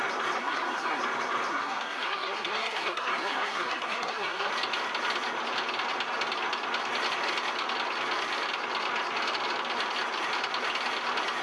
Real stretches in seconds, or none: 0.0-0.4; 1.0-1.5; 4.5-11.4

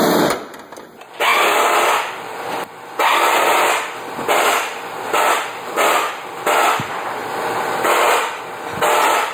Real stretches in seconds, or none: 7.2-8.8

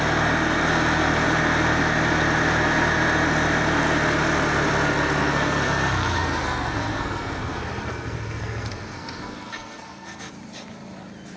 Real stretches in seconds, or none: 0.0-5.2; 10.3-11.4

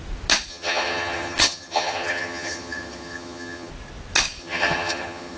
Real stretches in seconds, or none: 0.0-0.5; 3.7-4.4

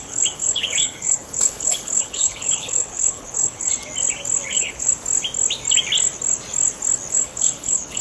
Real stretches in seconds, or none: 3.7-4.5; 4.9-7.1

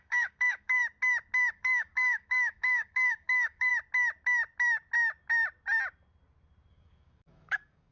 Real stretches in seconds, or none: 0.8-1.5; 3.7-6.7

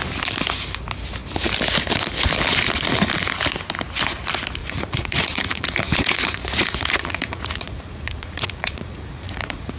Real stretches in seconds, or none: 0.0-4.6